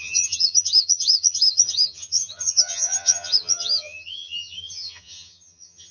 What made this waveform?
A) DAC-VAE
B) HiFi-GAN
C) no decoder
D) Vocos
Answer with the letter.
B